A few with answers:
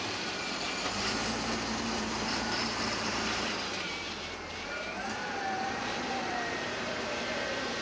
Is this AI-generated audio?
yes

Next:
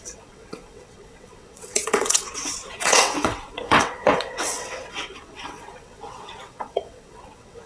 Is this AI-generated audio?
yes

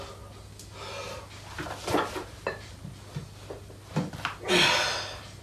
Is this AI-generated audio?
no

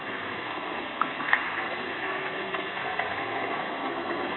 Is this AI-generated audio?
yes